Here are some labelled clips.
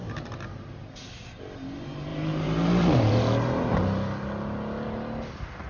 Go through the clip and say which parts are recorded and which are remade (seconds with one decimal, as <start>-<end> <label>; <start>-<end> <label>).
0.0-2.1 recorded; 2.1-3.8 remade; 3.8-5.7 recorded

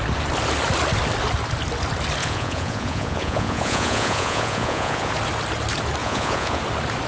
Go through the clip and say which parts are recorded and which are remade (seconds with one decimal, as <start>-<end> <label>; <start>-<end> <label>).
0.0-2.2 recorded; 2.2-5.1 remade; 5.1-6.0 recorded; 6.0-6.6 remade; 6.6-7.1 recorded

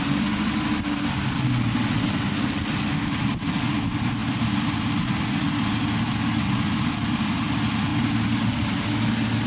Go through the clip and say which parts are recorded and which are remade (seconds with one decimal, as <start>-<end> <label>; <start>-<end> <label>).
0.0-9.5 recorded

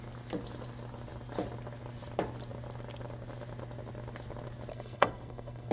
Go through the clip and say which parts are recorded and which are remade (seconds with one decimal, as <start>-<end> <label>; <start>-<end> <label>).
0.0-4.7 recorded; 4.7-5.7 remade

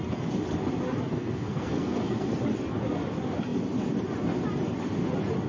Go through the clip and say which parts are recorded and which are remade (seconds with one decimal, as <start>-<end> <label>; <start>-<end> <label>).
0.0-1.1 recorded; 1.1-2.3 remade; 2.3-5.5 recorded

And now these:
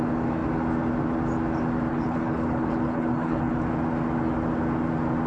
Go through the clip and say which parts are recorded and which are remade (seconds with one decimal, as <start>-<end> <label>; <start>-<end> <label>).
0.0-1.9 recorded; 1.9-3.5 remade; 3.5-5.3 recorded